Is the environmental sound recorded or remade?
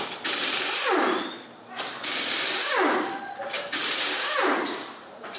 remade